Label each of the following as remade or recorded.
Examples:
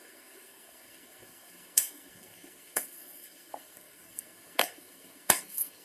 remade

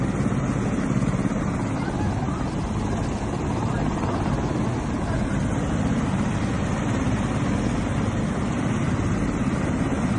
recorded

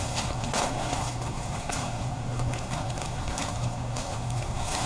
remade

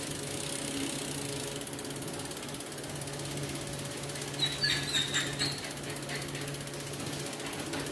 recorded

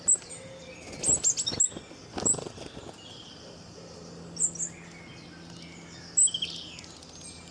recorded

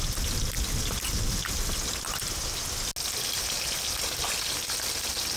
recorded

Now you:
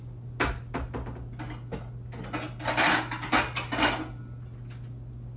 recorded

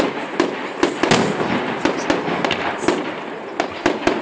recorded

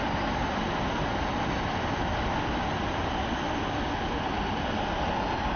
recorded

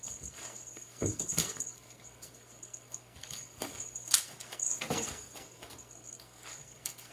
remade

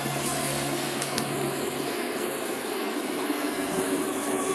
remade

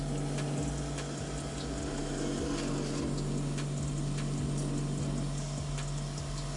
recorded